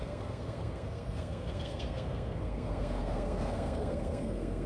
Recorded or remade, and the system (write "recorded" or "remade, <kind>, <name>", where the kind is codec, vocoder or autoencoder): remade, codec, SNAC